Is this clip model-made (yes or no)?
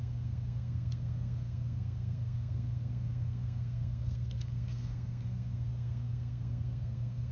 yes